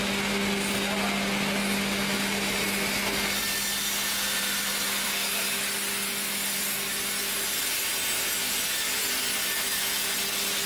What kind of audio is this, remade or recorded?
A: recorded